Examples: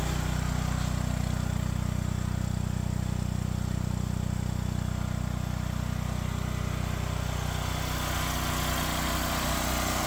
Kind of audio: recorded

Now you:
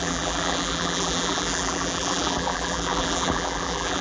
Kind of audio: remade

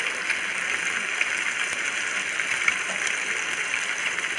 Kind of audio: remade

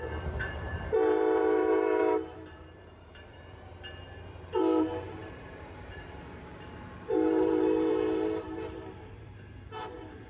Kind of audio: remade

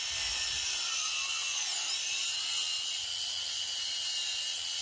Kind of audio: remade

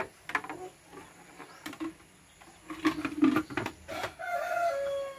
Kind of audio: recorded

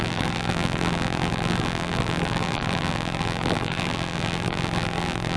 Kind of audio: remade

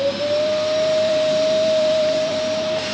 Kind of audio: remade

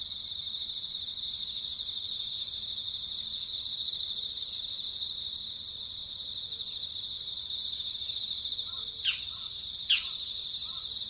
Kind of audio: recorded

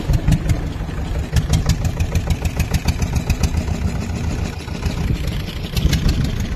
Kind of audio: recorded